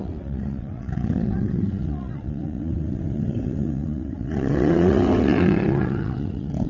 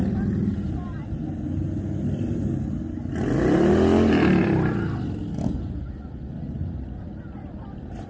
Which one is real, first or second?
second